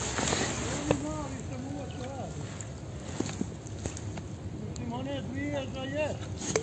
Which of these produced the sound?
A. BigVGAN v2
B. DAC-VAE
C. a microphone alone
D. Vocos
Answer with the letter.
C